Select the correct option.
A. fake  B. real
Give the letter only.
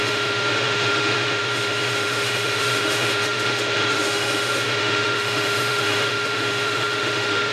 A